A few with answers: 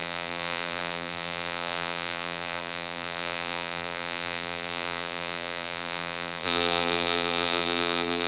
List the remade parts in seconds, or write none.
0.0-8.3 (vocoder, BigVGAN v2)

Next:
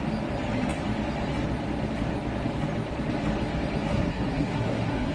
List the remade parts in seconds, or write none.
3.9-5.1 (codec, SNAC)

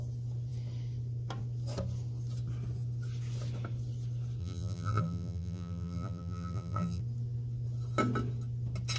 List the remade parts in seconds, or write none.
4.4-7.0 (vocoder, BigVGAN v2)

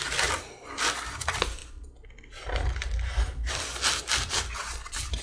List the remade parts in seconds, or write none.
1.6-3.5 (vocoder, BigVGAN v2)